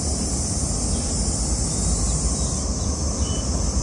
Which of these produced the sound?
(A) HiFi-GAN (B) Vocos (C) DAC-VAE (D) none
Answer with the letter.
D